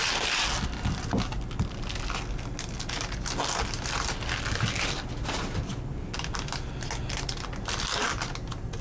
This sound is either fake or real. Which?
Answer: real